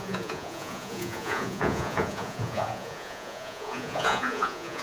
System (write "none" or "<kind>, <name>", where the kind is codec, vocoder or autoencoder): vocoder, Vocos